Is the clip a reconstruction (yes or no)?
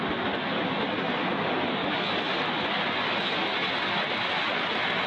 no